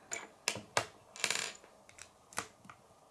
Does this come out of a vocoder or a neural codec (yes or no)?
no